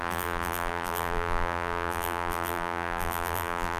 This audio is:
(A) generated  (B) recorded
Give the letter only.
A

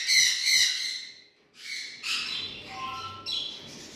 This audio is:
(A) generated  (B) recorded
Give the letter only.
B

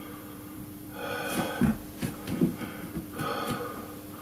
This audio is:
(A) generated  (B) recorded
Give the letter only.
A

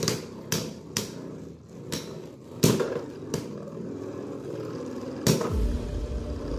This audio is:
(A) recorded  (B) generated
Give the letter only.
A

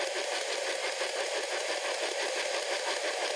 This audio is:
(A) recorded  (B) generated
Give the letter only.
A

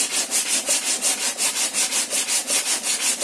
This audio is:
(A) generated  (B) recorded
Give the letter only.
B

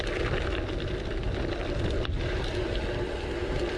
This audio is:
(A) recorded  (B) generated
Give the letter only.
A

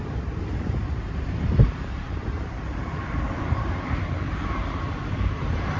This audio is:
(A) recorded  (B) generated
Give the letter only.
B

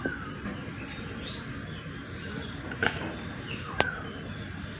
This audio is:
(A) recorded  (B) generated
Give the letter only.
A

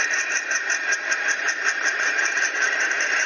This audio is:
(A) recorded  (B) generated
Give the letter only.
B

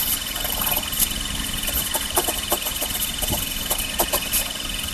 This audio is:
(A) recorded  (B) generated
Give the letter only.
B